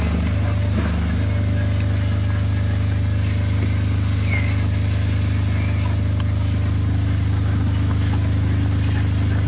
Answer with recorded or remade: recorded